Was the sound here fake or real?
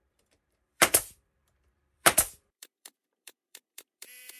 fake